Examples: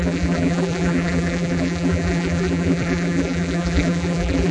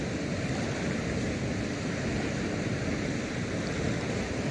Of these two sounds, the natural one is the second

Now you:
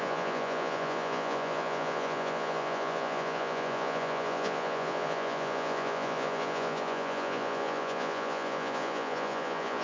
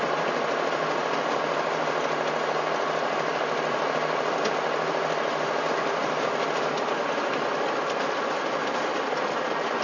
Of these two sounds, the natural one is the second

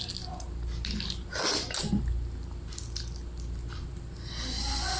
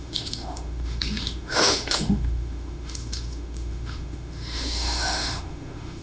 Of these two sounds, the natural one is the first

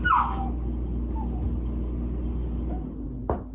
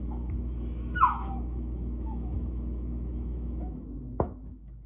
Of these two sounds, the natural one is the first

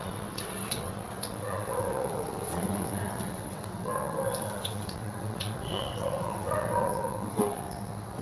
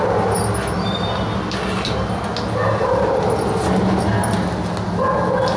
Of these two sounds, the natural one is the second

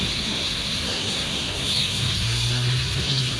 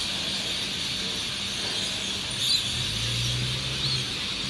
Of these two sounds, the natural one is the second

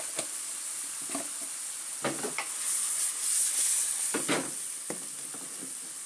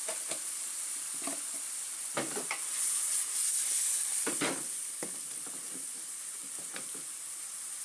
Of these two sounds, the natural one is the first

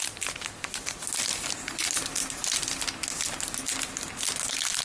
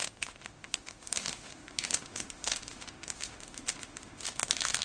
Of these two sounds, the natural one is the first